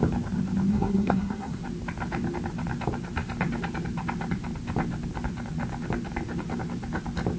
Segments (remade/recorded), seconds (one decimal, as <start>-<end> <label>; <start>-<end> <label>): 0.0-0.7 recorded; 0.7-1.6 remade; 1.6-7.4 recorded